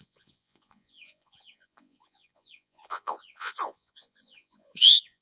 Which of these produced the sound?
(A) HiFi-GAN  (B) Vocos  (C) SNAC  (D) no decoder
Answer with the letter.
B